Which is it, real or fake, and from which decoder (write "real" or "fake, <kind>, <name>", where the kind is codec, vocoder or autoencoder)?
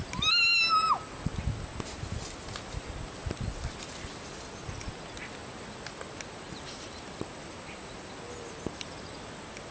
real